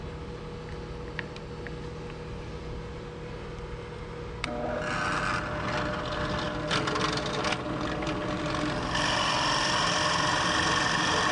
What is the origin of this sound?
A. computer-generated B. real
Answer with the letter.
B